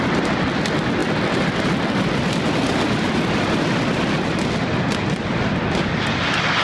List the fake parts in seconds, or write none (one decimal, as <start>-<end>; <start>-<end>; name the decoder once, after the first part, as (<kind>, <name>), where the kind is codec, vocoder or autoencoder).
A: 1.0-3.4 (vocoder, BigVGAN v2)